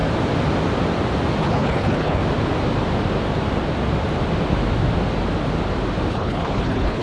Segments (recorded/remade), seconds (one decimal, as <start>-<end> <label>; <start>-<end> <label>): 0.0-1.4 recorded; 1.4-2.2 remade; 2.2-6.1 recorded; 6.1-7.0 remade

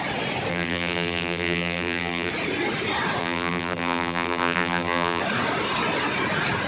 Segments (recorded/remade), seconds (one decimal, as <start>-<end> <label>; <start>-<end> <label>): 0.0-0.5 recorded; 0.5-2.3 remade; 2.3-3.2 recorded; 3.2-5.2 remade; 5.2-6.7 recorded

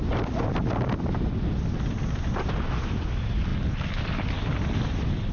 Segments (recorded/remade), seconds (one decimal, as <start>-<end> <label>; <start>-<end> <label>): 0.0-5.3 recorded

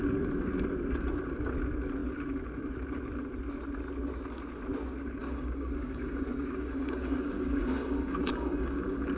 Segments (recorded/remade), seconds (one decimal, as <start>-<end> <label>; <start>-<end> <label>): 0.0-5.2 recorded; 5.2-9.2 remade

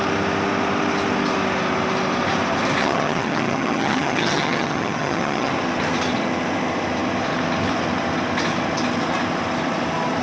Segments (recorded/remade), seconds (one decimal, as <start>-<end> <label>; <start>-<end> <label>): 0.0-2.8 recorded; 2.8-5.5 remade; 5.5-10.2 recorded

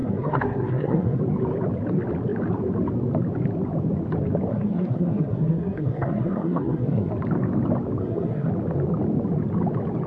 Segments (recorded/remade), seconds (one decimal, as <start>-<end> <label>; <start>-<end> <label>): 0.0-1.2 remade; 1.2-4.5 recorded; 4.5-7.1 remade; 7.1-8.0 recorded; 8.0-8.5 remade; 8.5-10.1 recorded

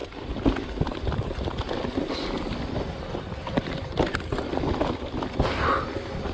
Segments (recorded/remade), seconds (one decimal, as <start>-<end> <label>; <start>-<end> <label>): 0.0-6.3 recorded

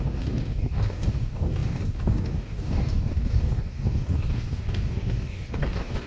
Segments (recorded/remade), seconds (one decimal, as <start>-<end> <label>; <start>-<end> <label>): 0.0-6.1 remade